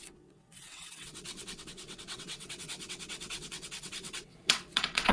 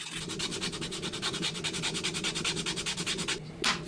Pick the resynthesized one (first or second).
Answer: first